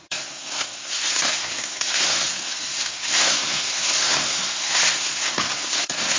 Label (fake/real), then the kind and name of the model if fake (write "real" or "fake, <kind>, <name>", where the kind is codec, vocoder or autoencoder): fake, codec, SNAC